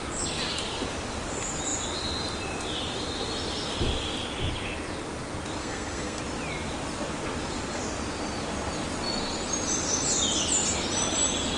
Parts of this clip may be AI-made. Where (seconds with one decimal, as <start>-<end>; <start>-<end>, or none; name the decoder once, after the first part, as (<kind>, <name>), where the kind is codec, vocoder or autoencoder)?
5.6-6.2 (codec, SNAC)